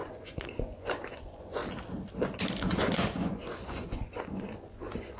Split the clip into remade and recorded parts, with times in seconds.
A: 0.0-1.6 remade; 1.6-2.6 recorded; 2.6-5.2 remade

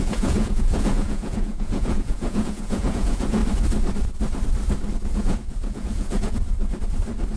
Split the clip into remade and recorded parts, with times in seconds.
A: 0.0-3.4 remade; 3.4-5.0 recorded; 5.0-6.4 remade; 6.4-7.4 recorded

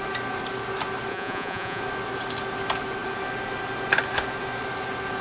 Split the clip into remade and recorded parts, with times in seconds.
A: 0.0-1.1 recorded; 1.1-1.8 remade; 1.8-5.2 recorded

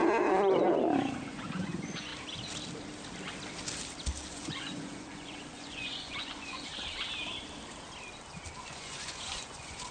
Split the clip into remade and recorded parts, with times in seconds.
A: 0.0-1.2 recorded; 1.2-2.1 remade; 2.1-4.3 recorded; 4.3-6.7 remade; 6.7-8.6 recorded; 8.6-9.9 remade

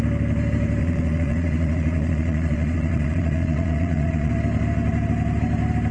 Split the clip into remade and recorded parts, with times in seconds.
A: 0.0-0.8 recorded; 0.8-4.3 remade; 4.3-5.9 recorded